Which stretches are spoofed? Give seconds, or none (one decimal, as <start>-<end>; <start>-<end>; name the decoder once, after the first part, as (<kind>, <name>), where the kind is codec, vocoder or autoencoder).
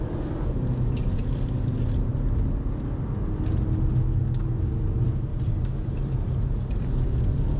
5.3-6.8 (vocoder, BigVGAN v2)